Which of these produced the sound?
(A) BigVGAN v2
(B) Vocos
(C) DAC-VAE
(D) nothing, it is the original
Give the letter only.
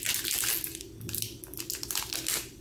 D